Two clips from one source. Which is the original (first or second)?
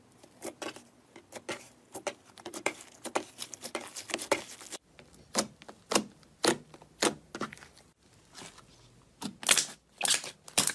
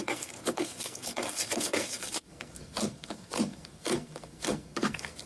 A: first